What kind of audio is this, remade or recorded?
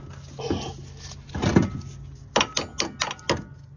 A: recorded